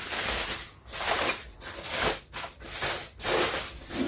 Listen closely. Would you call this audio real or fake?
real